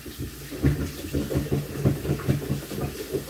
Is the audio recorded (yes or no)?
yes